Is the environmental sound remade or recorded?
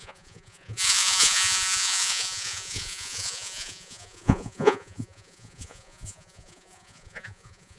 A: remade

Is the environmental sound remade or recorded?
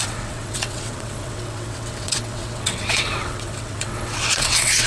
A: remade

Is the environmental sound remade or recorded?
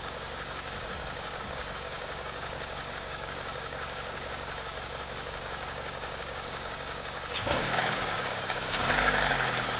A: remade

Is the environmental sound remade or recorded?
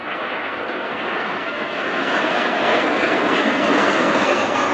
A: remade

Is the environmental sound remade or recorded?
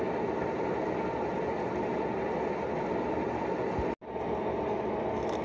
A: recorded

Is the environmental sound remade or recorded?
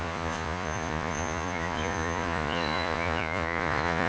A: remade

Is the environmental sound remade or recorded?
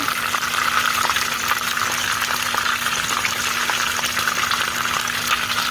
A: recorded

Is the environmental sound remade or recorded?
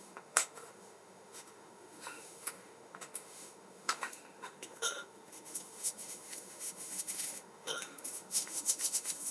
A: remade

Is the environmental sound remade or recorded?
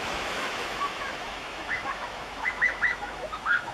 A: remade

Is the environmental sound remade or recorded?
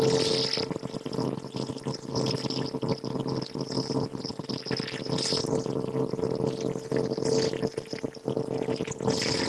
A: recorded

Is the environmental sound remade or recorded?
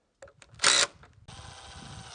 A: recorded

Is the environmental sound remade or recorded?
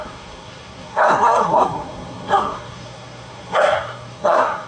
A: remade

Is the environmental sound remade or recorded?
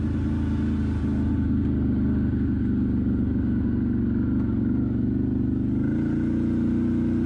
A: recorded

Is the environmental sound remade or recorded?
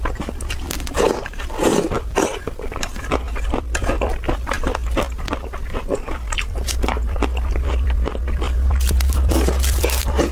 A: remade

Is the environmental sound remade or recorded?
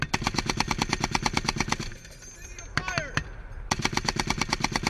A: recorded